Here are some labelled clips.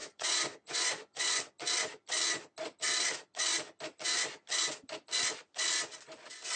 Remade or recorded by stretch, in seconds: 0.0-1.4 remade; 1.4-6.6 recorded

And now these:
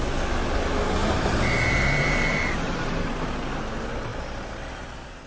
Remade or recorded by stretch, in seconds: 0.0-1.0 recorded; 1.0-3.3 remade; 3.3-4.1 recorded; 4.1-5.3 remade

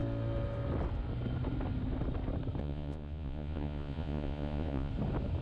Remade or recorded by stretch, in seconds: 0.0-2.6 recorded; 2.6-4.9 remade; 4.9-5.4 recorded

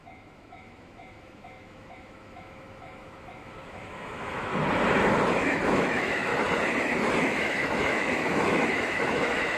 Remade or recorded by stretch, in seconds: 0.0-4.5 remade; 4.5-5.7 recorded; 5.7-6.3 remade; 6.3-7.2 recorded; 7.2-9.6 remade

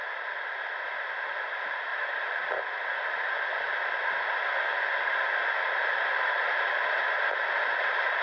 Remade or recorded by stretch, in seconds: 0.0-1.9 recorded; 1.9-2.5 remade; 2.5-8.2 recorded